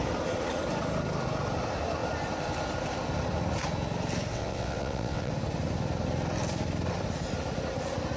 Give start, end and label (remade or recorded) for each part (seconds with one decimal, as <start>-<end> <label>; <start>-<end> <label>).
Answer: 0.0-4.3 recorded; 4.3-5.3 remade; 5.3-8.2 recorded